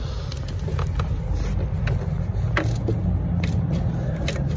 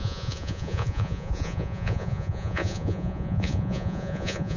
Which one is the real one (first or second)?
first